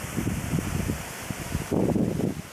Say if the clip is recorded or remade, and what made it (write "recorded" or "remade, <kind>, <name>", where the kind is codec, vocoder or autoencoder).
recorded